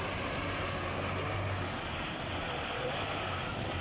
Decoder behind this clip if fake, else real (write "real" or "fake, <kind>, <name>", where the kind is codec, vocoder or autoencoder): real